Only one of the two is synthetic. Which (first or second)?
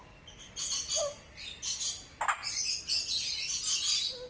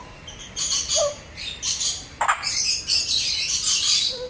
second